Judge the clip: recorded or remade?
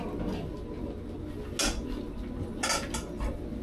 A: recorded